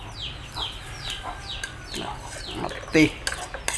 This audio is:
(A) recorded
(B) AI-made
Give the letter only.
A